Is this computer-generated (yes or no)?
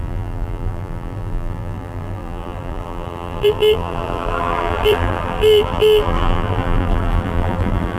yes